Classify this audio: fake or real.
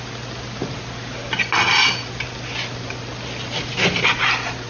real